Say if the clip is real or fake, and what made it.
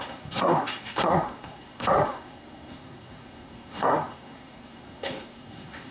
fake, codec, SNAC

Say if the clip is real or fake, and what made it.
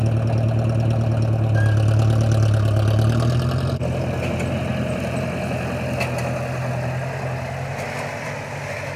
real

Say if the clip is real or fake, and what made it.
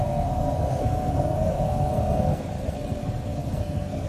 fake, codec, SNAC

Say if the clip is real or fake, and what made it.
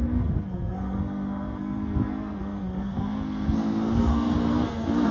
fake, codec, SNAC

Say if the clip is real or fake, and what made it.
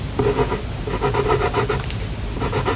real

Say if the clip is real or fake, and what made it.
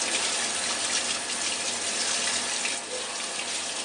real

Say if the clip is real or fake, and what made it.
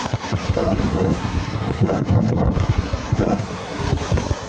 fake, codec, SNAC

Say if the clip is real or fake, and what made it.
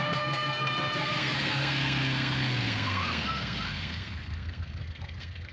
fake, codec, SNAC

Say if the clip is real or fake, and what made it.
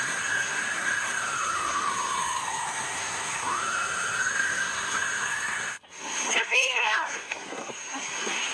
fake, codec, SNAC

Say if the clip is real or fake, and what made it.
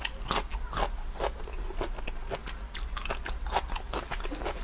real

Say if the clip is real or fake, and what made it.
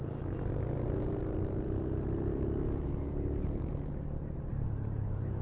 real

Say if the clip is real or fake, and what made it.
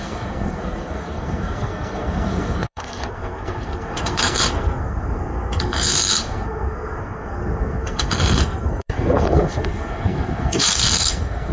fake, codec, SNAC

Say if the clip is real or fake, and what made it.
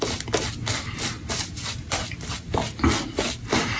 real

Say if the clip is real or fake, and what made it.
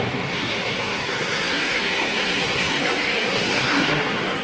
fake, codec, SNAC